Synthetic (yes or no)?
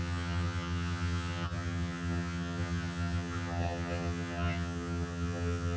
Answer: yes